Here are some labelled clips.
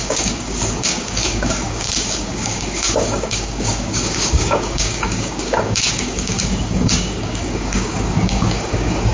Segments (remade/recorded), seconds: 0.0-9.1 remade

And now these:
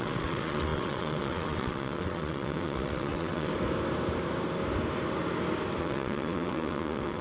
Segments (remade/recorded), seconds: 0.0-3.5 remade; 3.5-5.8 recorded; 5.8-7.2 remade